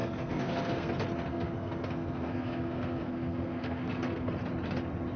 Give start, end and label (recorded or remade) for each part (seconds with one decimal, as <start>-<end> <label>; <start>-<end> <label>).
0.0-0.9 remade; 0.9-1.3 recorded; 1.3-4.3 remade; 4.3-5.2 recorded